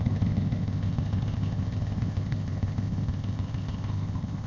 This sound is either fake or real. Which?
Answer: fake